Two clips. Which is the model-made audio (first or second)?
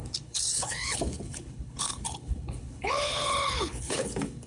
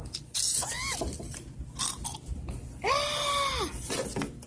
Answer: first